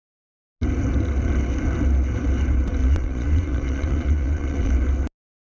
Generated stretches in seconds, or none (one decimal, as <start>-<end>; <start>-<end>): 2.8-4.7